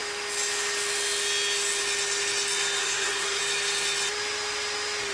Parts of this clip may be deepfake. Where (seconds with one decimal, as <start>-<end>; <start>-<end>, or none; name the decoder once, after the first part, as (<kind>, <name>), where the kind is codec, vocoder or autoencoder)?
2.8-3.4 (codec, SNAC)